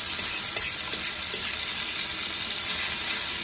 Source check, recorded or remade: remade